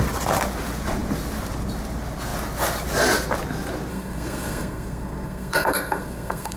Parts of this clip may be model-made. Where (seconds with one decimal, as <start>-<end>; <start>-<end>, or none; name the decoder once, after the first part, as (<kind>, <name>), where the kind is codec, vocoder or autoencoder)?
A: 3.9-6.6 (codec, SNAC)